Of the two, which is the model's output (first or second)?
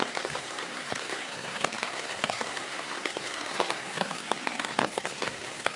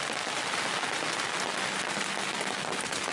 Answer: first